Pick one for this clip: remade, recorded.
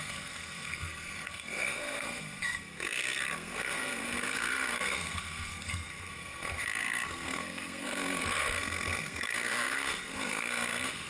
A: remade